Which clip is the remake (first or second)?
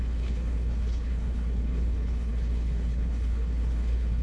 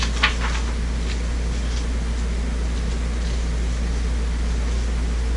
first